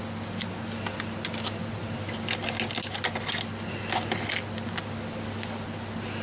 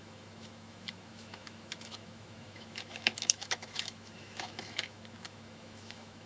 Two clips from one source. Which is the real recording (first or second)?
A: first